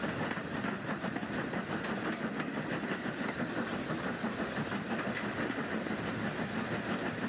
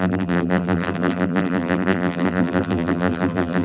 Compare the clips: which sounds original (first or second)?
first